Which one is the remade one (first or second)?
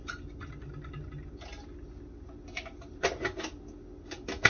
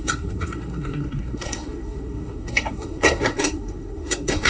second